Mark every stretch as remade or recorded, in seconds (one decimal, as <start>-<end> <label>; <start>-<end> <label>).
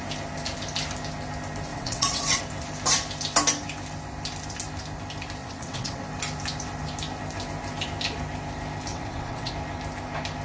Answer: 0.0-1.7 recorded; 1.7-2.4 remade; 2.4-5.4 recorded; 5.4-6.0 remade; 6.0-8.9 recorded; 8.9-9.5 remade; 9.5-10.4 recorded